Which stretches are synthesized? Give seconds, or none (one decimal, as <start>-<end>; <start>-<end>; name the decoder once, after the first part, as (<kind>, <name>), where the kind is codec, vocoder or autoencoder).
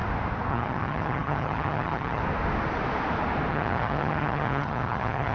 0.5-2.2 (vocoder, HiFi-GAN); 3.5-5.3